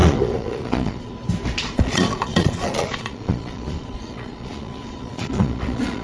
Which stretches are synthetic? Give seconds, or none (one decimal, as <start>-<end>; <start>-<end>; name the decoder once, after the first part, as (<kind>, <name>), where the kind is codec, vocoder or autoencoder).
0.0-1.1 (vocoder, Vocos); 1.6-6.0